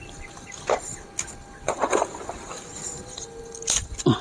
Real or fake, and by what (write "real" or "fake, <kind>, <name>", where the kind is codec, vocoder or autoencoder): real